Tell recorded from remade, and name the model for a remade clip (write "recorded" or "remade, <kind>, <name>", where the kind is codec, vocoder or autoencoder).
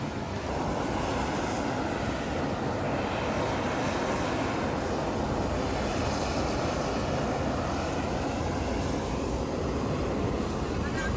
recorded